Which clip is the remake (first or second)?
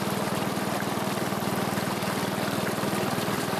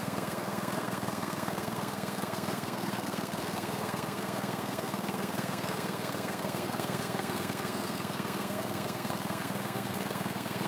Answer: second